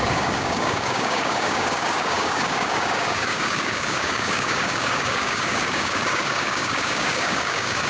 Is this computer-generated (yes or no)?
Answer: yes